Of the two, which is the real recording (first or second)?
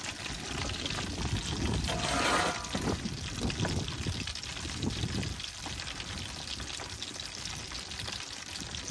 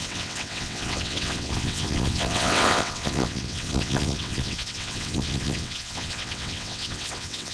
first